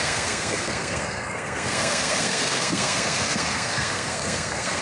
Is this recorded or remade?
remade